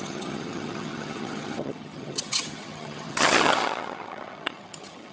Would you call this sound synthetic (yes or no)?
yes